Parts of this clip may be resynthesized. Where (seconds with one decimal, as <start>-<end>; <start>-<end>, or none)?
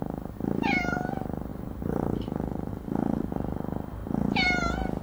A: none